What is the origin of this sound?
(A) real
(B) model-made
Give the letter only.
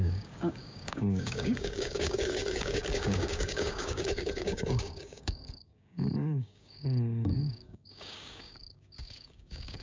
B